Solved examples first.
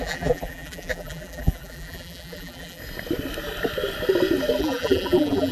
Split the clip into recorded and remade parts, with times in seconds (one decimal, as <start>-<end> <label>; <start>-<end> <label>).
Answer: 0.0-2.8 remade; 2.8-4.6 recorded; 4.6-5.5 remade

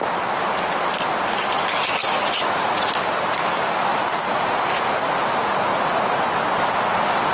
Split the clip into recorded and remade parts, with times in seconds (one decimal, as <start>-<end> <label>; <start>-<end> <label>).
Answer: 0.0-2.0 recorded; 2.0-2.9 remade; 2.9-3.9 recorded; 3.9-5.1 remade; 5.1-5.7 recorded; 5.7-6.2 remade; 6.2-7.3 recorded

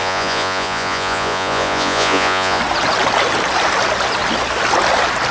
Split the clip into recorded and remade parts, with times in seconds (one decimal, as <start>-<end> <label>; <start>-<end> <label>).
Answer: 0.0-2.6 remade; 2.6-5.3 recorded